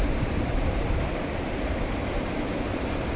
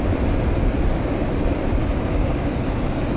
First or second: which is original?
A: second